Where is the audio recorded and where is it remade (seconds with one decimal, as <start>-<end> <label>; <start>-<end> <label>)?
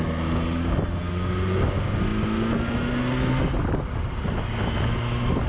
0.0-5.5 recorded